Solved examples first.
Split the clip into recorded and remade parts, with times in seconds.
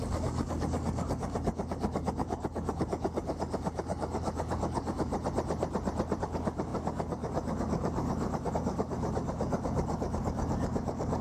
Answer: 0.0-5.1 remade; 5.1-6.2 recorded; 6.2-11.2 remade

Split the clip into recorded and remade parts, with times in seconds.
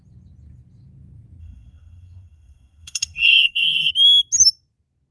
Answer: 0.0-1.4 recorded; 1.4-3.9 remade; 3.9-5.1 recorded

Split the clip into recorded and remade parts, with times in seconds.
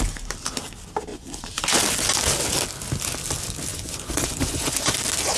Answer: 0.0-1.1 recorded; 1.1-1.6 remade; 1.6-3.7 recorded; 3.7-4.9 remade; 4.9-5.4 recorded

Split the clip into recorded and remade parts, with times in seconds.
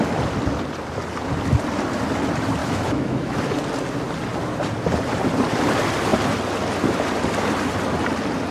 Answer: 0.0-2.6 recorded; 2.6-3.4 remade; 3.4-8.5 recorded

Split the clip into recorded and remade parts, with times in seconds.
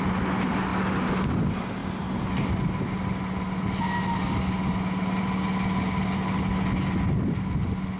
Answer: 0.0-8.0 recorded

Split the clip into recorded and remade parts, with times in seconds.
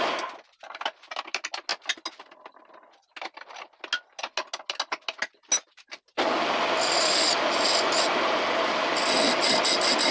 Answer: 0.0-10.1 recorded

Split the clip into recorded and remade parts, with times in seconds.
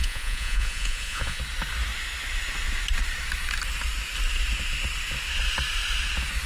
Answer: 0.0-1.4 remade; 1.4-6.5 recorded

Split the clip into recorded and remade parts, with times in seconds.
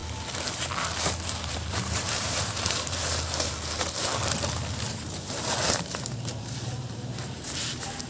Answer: 0.0-1.4 recorded; 1.4-3.0 remade; 3.0-4.9 recorded; 4.9-8.1 remade